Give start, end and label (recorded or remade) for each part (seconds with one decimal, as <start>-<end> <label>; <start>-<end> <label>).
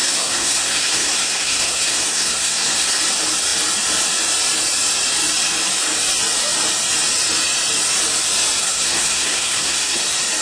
0.0-3.0 remade; 3.0-8.6 recorded; 8.6-10.0 remade; 10.0-10.4 recorded